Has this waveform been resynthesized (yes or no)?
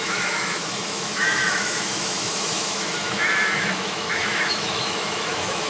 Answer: yes